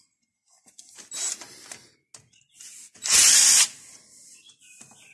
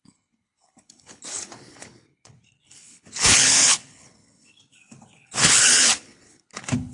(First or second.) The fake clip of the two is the second